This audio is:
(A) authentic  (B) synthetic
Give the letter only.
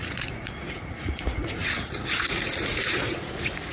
B